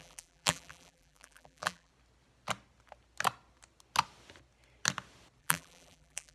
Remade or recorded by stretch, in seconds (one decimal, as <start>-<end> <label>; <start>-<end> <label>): 0.0-1.9 remade; 1.9-5.4 recorded; 5.4-6.3 remade